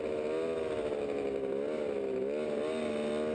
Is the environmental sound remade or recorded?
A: recorded